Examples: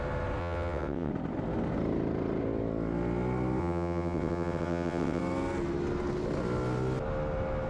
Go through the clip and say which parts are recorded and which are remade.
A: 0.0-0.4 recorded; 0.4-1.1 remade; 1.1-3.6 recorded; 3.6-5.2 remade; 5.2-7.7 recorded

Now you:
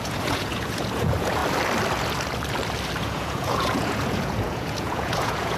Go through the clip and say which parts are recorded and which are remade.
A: 0.0-1.4 remade; 1.4-3.0 recorded; 3.0-5.6 remade

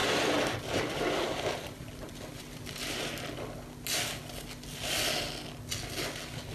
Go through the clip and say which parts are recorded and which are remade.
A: 0.0-3.1 remade; 3.1-6.5 recorded

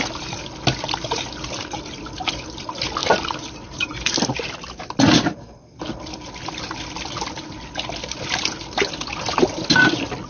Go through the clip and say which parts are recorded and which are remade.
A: 0.0-10.3 recorded

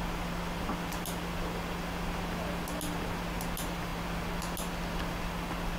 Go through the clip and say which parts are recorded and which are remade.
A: 0.0-5.8 recorded

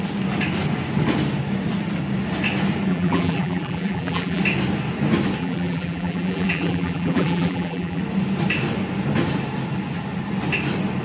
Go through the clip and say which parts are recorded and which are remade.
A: 0.0-2.9 recorded; 2.9-4.4 remade; 4.4-5.4 recorded; 5.4-8.0 remade; 8.0-11.0 recorded

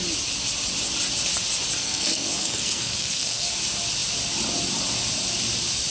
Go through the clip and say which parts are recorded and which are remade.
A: 0.0-1.8 recorded; 1.8-3.5 remade; 3.5-5.9 recorded

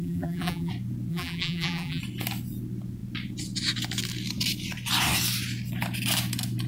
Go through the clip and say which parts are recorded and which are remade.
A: 0.0-0.7 remade; 0.7-1.1 recorded; 1.1-2.0 remade; 2.0-6.7 recorded